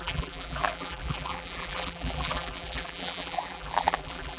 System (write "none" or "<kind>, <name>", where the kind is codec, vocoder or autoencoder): vocoder, BigVGAN v2